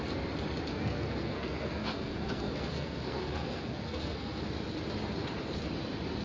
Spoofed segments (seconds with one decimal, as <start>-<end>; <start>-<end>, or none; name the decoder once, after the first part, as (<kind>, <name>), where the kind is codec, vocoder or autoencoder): 0.7-4.4 (codec, SNAC)